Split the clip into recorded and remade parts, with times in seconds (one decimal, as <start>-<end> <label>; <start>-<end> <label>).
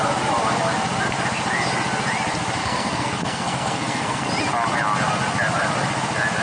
0.0-2.6 recorded; 2.6-4.3 remade; 4.3-6.4 recorded